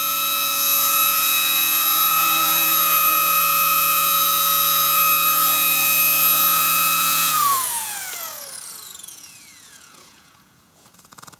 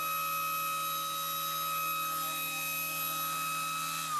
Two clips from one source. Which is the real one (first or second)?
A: second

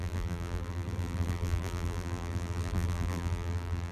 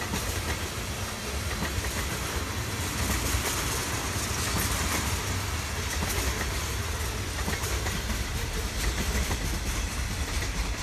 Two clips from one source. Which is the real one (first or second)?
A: second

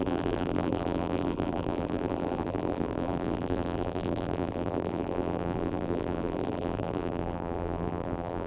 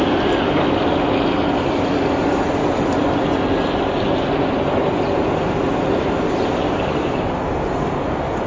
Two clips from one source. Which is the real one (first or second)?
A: second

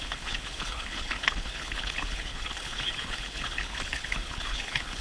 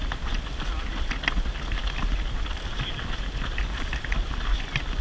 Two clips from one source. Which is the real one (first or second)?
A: second